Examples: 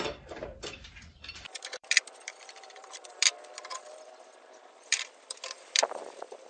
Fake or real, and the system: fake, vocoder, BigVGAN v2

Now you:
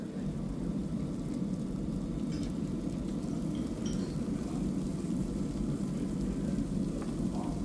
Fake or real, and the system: fake, vocoder, BigVGAN v2